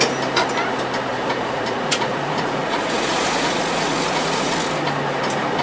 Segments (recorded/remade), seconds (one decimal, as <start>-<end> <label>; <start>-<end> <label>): 0.0-1.1 recorded; 1.1-4.5 remade; 4.5-5.6 recorded